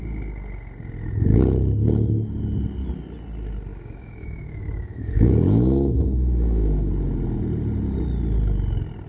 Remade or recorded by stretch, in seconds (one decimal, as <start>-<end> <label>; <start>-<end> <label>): 0.0-3.7 recorded; 3.7-6.9 remade; 6.9-9.1 recorded